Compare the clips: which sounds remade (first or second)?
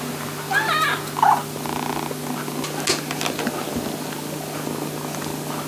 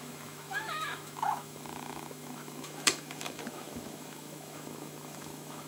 second